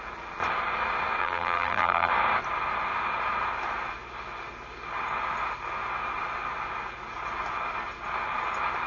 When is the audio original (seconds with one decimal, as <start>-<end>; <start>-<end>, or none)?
0.0-1.2; 2.1-8.9